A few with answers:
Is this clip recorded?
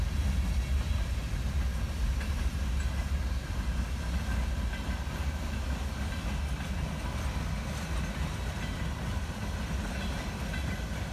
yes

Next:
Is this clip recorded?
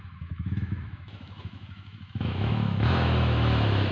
no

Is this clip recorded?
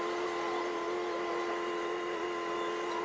yes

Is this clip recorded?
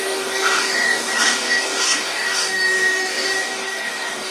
no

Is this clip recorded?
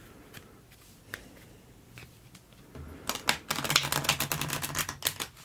yes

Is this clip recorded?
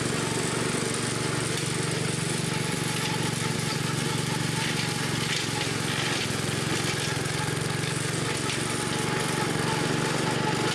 yes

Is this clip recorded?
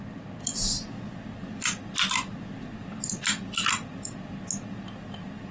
yes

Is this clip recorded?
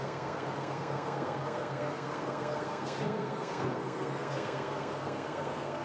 no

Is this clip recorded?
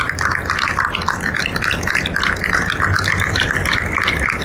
yes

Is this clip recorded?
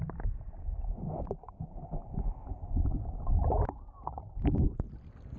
yes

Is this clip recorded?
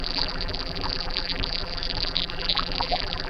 no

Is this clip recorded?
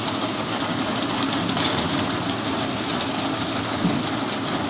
yes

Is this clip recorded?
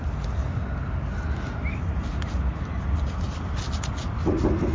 yes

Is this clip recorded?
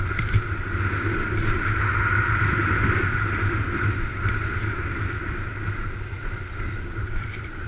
yes